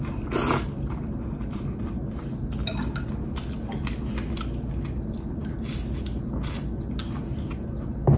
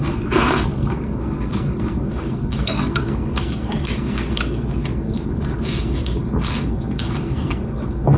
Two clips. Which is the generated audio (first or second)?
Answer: second